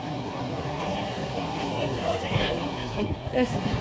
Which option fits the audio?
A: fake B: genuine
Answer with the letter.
A